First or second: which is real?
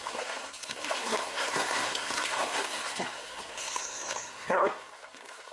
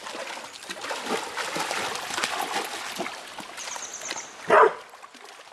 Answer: second